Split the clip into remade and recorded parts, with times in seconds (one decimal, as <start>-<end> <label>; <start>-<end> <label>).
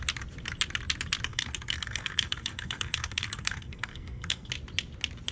0.0-1.3 recorded; 1.3-4.5 remade; 4.5-5.3 recorded